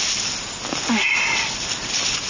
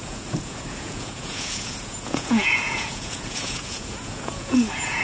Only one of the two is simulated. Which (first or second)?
second